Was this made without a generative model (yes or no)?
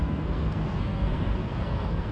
no